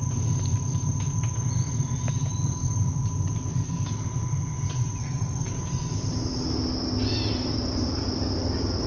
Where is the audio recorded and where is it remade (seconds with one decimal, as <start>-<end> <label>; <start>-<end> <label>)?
0.0-5.0 recorded; 5.0-5.5 remade; 5.5-8.9 recorded